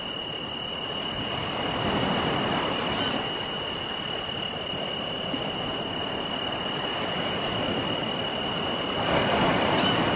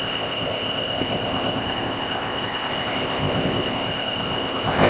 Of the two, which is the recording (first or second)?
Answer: first